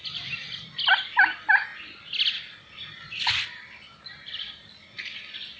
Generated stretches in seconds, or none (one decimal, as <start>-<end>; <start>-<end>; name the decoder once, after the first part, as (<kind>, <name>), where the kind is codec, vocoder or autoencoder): none